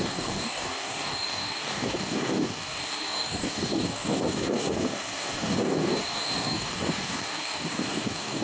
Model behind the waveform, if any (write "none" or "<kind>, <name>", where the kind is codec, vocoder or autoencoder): codec, DAC